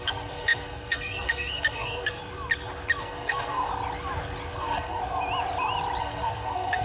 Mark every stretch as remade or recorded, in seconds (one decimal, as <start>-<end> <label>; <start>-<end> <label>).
0.0-2.2 remade; 2.2-3.0 recorded; 3.0-3.7 remade; 3.7-4.6 recorded; 4.6-5.0 remade; 5.0-6.0 recorded; 6.0-6.8 remade